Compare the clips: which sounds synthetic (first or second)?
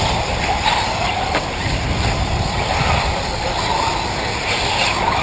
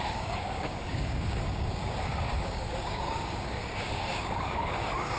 second